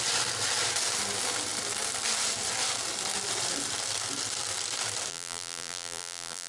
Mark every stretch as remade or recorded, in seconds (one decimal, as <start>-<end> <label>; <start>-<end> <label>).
0.0-5.1 recorded; 5.1-6.5 remade